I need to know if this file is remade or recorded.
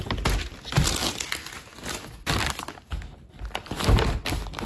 recorded